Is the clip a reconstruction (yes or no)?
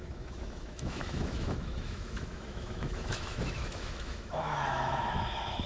yes